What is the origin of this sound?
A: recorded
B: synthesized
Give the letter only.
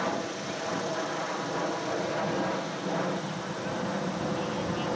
A